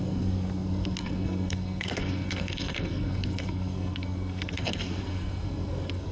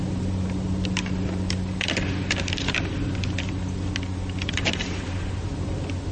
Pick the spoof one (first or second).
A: first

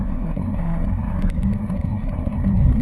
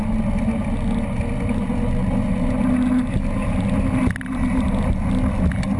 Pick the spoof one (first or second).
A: first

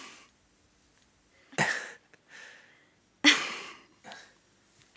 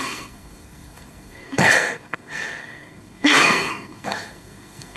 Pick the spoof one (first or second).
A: second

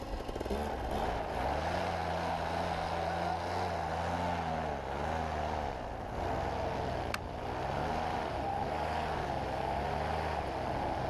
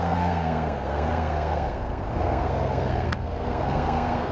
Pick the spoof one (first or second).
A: second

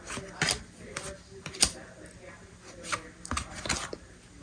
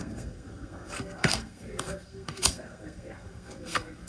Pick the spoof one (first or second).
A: second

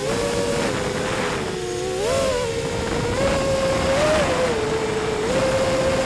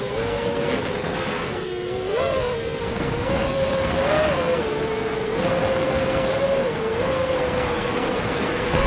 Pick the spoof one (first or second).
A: second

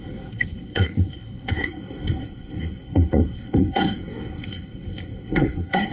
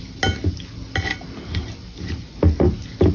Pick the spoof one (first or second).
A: first